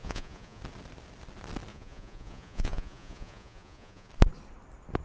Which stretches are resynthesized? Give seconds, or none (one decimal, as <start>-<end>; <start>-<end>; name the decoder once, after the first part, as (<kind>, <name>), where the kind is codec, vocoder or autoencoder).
0.0-0.6 (vocoder, Vocos); 1.7-4.1

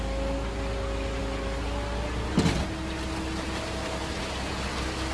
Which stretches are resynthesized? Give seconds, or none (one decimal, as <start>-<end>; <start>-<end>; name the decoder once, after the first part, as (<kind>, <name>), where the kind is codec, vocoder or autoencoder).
none

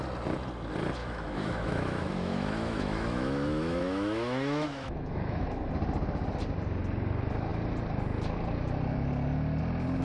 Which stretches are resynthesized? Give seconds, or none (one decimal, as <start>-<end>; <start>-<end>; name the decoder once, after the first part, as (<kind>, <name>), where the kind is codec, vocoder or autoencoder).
1.0-5.7 (autoencoder, DAC-VAE)

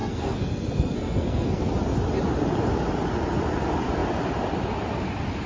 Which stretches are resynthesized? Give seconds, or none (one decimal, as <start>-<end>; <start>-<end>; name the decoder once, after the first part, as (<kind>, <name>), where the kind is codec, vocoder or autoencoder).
0.0-1.7 (codec, SNAC)

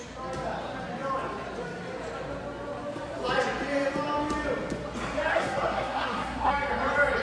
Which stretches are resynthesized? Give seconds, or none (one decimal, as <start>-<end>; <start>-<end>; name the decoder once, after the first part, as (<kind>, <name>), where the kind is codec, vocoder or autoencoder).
5.3-6.5 (codec, SNAC)

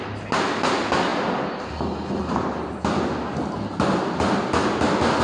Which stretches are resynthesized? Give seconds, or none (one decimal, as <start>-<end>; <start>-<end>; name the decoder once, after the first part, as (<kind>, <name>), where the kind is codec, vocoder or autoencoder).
none

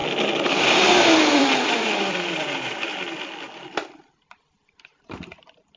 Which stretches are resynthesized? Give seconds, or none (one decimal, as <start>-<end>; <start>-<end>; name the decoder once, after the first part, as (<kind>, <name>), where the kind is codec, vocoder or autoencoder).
0.0-3.0 (vocoder, BigVGAN v2)

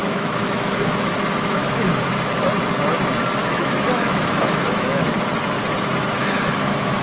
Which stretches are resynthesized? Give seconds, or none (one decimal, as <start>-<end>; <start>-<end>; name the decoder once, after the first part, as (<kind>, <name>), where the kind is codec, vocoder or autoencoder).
0.0-2.1 (autoencoder, DAC-VAE); 3.4-5.2; 6.2-7.0